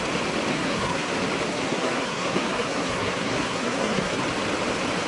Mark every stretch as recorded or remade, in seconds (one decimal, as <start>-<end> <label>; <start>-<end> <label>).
0.0-0.5 recorded; 0.5-1.1 remade; 1.1-1.5 recorded; 1.5-4.2 remade; 4.2-5.1 recorded